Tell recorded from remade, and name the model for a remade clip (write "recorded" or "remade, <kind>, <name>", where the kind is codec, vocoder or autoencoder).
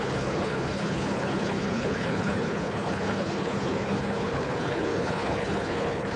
remade, codec, HILCodec